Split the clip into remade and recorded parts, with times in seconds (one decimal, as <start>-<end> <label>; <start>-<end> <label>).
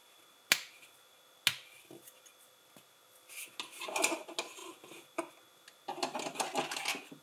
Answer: 0.0-7.2 recorded